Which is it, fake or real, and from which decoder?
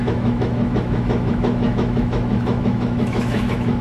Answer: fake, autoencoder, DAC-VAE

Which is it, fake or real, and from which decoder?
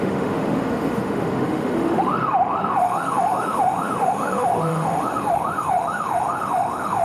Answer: fake, autoencoder, DAC-VAE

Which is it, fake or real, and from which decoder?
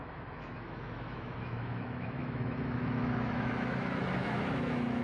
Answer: fake, autoencoder, DAC-VAE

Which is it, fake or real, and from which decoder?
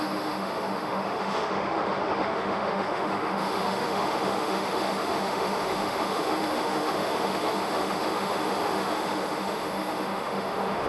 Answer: fake, autoencoder, DAC-VAE